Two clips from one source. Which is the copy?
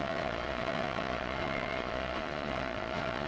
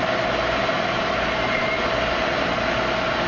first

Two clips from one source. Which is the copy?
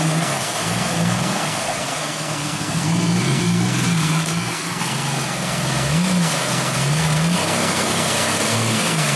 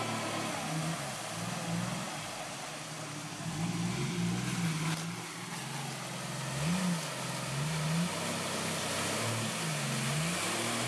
first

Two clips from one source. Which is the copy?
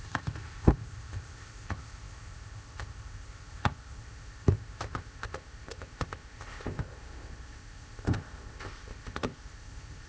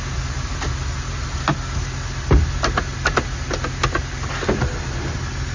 first